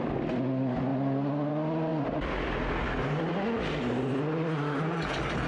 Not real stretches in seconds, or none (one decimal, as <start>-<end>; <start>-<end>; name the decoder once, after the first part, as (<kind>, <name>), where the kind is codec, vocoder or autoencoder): none